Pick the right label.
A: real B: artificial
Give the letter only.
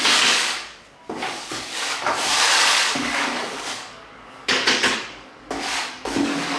B